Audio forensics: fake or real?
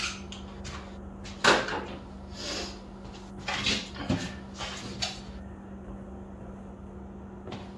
real